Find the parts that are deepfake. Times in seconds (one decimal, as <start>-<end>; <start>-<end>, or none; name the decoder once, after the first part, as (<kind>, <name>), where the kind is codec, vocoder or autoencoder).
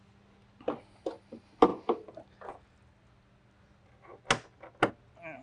none